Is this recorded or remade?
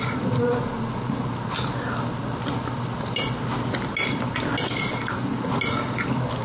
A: recorded